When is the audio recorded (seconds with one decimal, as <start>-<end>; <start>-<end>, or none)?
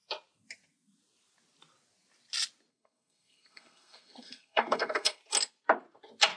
0.0-2.7; 5.2-6.4